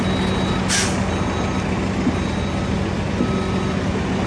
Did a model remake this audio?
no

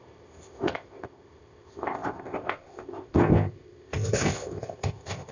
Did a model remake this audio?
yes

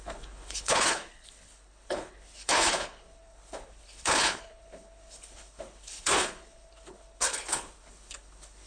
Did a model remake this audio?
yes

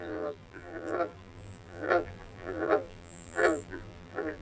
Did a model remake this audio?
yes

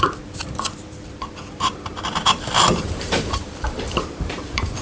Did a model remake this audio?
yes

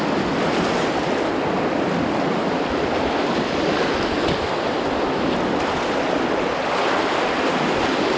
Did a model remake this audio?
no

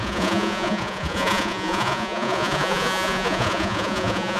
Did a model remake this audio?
yes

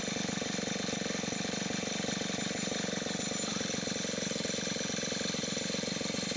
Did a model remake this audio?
no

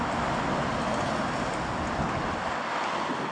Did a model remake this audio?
no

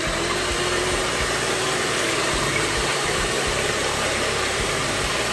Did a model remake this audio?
yes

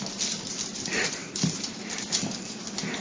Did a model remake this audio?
no